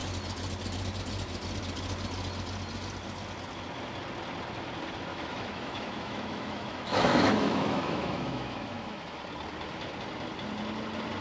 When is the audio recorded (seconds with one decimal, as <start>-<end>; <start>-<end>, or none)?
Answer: 0.0-5.1; 9.2-11.2